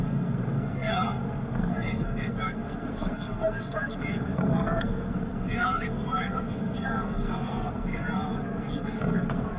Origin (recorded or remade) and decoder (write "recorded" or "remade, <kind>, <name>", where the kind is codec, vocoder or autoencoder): remade, codec, SNAC